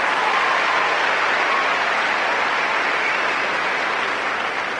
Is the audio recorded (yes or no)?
yes